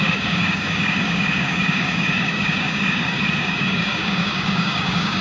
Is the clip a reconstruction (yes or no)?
yes